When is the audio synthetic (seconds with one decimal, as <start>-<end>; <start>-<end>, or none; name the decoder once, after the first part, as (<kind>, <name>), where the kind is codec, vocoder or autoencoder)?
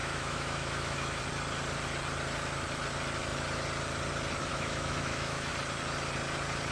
0.0-1.2 (autoencoder, DAC-VAE); 4.5-5.5